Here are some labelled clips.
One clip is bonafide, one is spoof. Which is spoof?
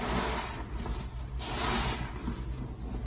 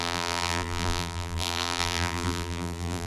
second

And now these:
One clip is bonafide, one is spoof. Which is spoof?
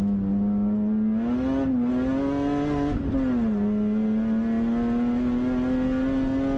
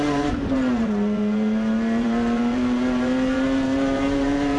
second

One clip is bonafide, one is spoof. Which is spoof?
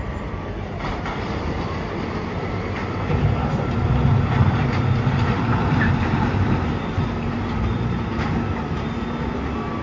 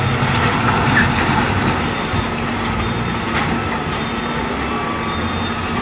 first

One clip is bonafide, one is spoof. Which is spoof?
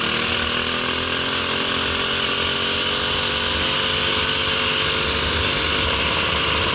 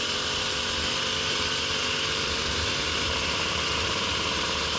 second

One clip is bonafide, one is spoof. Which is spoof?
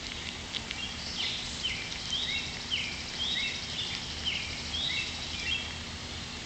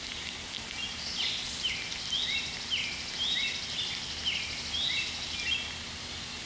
first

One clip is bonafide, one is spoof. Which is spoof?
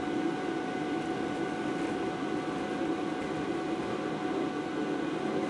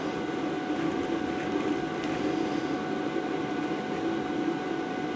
second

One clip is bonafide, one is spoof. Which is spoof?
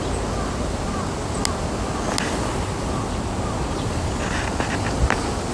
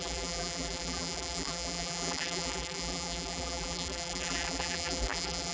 second